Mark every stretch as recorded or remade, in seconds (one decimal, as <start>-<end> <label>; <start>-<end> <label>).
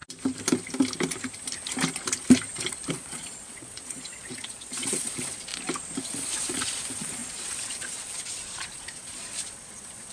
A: 0.0-2.9 recorded; 2.9-5.5 remade; 5.5-6.0 recorded; 6.0-10.1 remade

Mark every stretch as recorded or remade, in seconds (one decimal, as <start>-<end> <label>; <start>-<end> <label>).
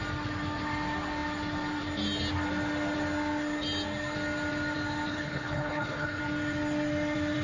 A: 0.0-5.1 recorded; 5.1-6.2 remade; 6.2-7.4 recorded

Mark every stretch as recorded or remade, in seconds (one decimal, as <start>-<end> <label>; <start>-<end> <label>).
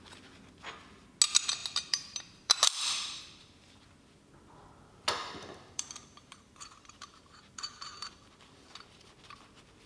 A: 0.0-1.6 recorded; 1.6-3.2 remade; 3.2-5.2 recorded; 5.2-9.1 remade; 9.1-9.9 recorded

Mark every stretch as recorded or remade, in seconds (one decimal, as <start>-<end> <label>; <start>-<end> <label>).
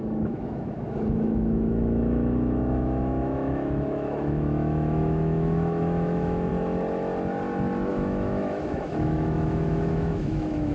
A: 0.0-6.5 remade; 6.5-7.9 recorded; 7.9-10.7 remade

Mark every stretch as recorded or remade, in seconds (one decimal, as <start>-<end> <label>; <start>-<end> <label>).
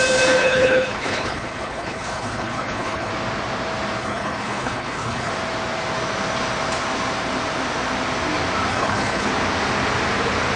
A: 0.0-0.4 recorded; 0.4-3.1 remade; 3.1-4.0 recorded; 4.0-5.3 remade; 5.3-8.7 recorded; 8.7-9.3 remade; 9.3-10.6 recorded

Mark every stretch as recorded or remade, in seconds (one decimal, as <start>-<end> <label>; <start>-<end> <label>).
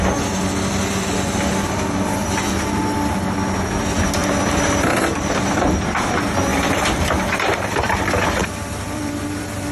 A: 0.0-2.2 recorded; 2.2-2.8 remade; 2.8-4.2 recorded; 4.2-5.4 remade; 5.4-6.5 recorded; 6.5-7.1 remade; 7.1-8.4 recorded; 8.4-9.7 remade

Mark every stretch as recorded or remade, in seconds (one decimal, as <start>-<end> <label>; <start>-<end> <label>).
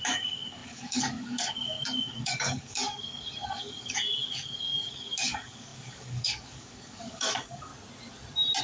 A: 0.0-7.7 remade; 7.7-8.6 recorded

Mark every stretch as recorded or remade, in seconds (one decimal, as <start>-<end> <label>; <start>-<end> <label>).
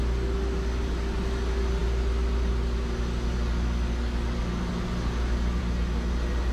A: 0.0-6.5 recorded